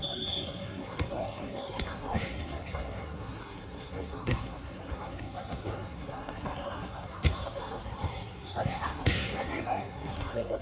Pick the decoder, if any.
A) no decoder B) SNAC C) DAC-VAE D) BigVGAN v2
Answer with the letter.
B